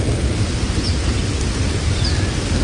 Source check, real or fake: real